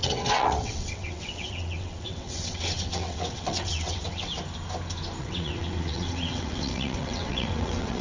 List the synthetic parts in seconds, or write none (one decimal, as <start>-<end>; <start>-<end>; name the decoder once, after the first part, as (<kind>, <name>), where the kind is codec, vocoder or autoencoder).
0.0-4.3 (vocoder, WaveNeXt); 5.2-8.0